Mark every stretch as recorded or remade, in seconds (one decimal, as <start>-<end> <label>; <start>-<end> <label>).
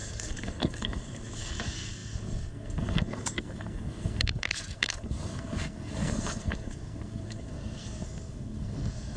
0.0-9.2 remade